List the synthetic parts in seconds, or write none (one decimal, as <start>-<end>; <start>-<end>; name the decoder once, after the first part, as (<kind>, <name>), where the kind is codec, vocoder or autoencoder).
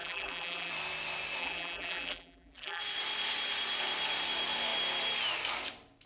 0.0-0.7 (vocoder, BigVGAN v2); 1.4-2.8